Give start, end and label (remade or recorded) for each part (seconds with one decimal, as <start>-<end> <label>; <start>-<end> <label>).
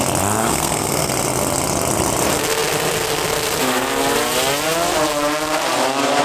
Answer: 0.0-0.4 recorded; 0.4-1.1 remade; 1.1-6.2 recorded